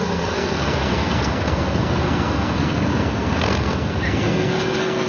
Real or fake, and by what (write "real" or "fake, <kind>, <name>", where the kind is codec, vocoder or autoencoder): fake, codec, SNAC